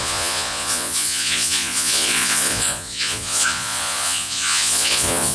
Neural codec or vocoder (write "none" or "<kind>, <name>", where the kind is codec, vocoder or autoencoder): vocoder, Vocos